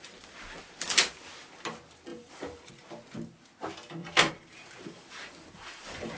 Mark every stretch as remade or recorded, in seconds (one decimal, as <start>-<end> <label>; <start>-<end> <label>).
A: 0.0-2.1 recorded; 2.1-2.7 remade; 2.7-4.0 recorded; 4.0-6.2 remade